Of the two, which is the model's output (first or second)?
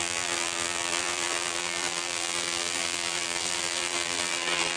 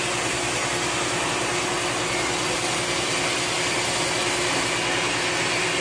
first